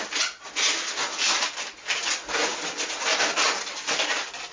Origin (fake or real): real